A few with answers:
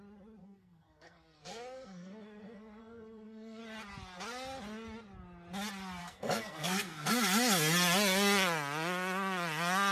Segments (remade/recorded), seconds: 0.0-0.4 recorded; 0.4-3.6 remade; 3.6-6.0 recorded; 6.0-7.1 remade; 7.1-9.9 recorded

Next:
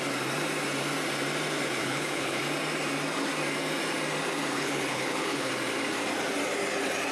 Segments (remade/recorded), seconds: 0.0-1.8 recorded; 1.8-2.4 remade; 2.4-4.5 recorded; 4.5-5.5 remade; 5.5-7.1 recorded

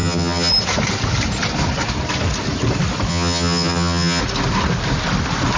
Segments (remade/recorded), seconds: 0.0-0.5 remade; 0.5-3.1 recorded; 3.1-4.2 remade; 4.2-5.6 recorded

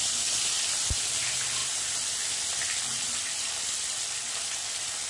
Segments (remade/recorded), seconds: 0.0-5.1 recorded

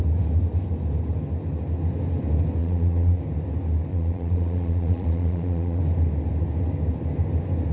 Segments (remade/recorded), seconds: 0.0-2.6 recorded; 2.6-3.2 remade; 3.2-3.9 recorded; 3.9-5.8 remade; 5.8-7.7 recorded

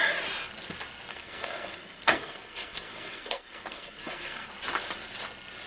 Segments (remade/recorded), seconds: 0.0-1.1 recorded; 1.1-4.5 remade; 4.5-5.7 recorded